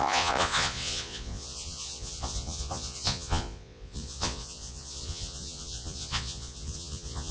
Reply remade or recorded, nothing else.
remade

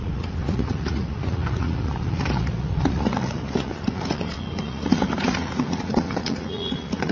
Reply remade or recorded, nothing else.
remade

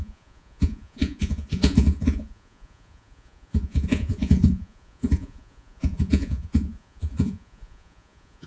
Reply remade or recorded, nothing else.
remade